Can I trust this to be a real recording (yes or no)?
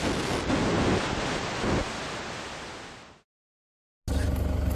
yes